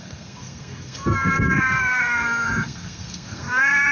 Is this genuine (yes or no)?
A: no